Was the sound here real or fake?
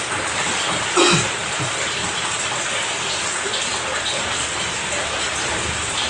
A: real